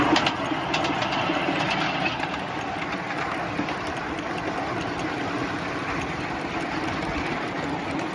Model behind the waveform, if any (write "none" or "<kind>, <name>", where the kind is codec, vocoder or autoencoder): none